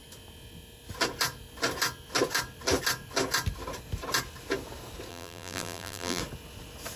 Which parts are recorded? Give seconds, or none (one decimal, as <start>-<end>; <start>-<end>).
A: 0.0-5.1; 6.2-7.0